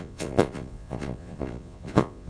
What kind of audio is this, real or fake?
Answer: fake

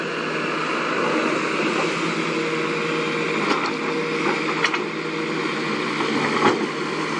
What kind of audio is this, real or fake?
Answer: real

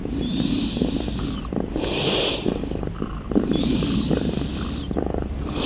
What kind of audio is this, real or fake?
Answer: real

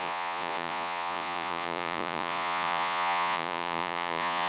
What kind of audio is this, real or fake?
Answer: fake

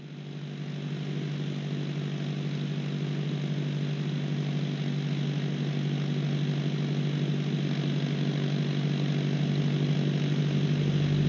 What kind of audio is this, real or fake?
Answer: real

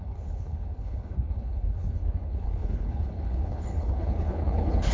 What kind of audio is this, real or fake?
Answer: fake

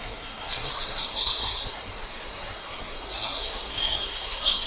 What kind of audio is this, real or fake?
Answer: fake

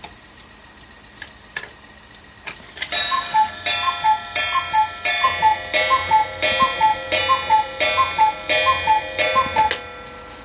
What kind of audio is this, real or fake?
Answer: real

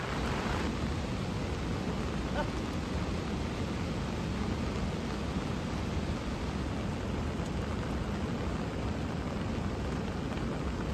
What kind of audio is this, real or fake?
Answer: real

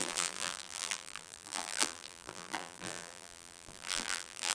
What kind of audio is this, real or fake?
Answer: fake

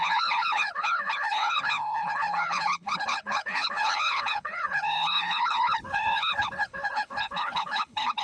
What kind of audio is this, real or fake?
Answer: fake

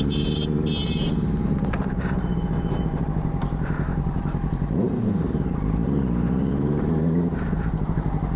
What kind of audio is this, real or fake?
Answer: fake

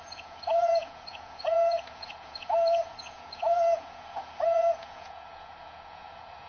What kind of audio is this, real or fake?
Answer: fake